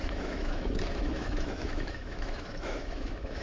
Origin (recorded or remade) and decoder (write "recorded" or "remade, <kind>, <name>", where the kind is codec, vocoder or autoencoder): remade, autoencoder, DAC-VAE